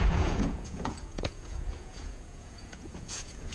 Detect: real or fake fake